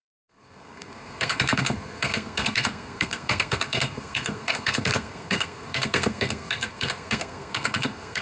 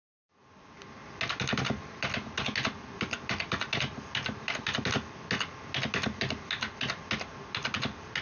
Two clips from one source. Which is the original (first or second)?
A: second